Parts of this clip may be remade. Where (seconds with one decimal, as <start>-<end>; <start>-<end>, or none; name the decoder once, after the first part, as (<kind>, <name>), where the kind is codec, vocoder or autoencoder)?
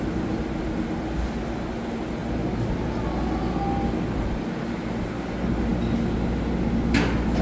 none